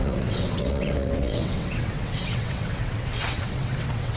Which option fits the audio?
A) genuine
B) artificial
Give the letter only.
B